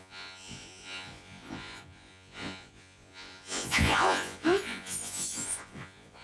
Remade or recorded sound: remade